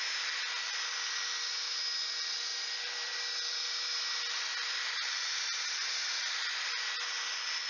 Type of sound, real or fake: real